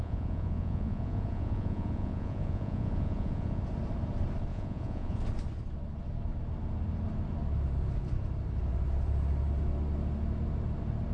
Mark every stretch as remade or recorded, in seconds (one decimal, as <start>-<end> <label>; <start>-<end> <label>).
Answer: 0.0-3.6 remade; 3.6-4.5 recorded; 4.5-5.2 remade; 5.2-11.1 recorded